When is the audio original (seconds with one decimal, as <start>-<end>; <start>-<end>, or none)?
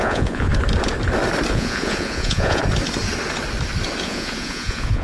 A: 0.5-1.5; 2.6-4.0